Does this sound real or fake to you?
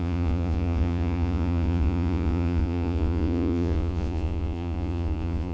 fake